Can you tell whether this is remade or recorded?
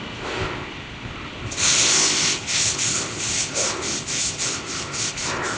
remade